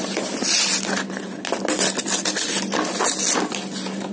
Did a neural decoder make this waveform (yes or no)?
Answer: no